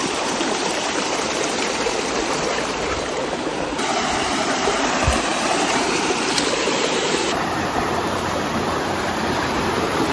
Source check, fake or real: fake